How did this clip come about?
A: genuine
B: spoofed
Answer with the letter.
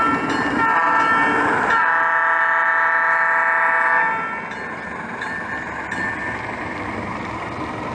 A